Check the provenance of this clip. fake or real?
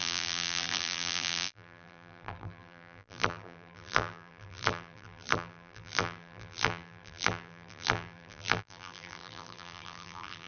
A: fake